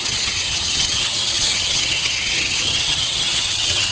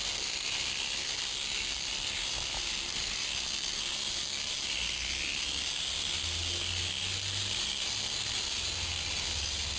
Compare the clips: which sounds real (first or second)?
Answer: second